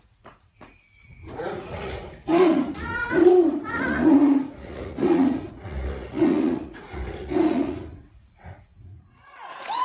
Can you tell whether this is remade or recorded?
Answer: remade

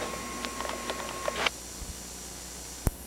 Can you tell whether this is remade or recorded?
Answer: recorded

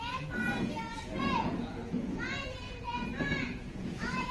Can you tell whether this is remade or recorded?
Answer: remade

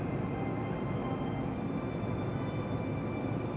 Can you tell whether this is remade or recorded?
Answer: recorded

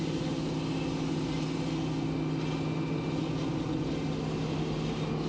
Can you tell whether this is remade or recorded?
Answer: recorded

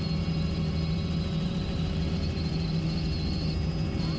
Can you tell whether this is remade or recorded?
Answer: recorded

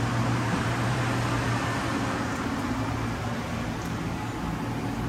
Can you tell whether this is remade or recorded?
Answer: recorded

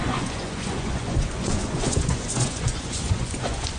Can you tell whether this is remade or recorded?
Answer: remade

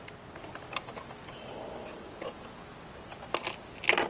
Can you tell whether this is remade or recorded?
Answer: recorded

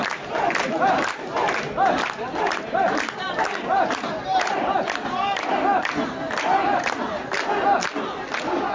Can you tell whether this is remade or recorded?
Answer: recorded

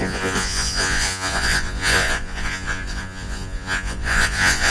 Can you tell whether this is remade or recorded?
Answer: remade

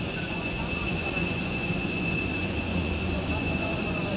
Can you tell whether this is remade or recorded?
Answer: remade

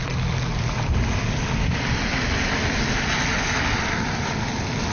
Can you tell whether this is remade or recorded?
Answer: recorded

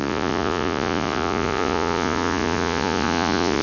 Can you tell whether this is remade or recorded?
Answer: remade